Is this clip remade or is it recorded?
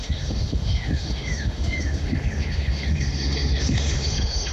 remade